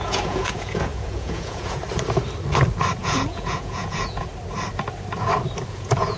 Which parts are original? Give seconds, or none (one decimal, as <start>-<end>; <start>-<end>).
1.8-3.0; 4.3-5.7